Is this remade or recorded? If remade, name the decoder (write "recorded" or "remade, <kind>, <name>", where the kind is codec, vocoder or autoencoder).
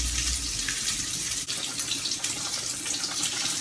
remade, vocoder, BigVGAN v2